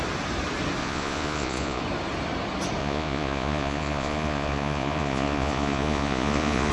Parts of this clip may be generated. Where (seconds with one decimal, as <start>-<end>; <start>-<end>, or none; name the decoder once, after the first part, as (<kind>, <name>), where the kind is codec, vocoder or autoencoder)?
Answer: 0.8-1.8 (vocoder, Vocos); 2.8-6.7